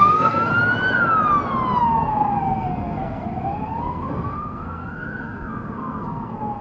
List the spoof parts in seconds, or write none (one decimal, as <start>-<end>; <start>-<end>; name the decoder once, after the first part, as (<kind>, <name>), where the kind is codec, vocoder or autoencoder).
0.0-0.5 (codec, SNAC); 1.8-6.6